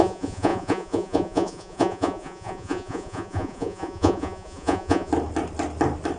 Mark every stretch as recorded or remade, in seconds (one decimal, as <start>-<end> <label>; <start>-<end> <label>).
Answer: 0.0-5.1 remade; 5.1-6.2 recorded